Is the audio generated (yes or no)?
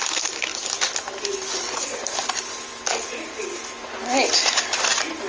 no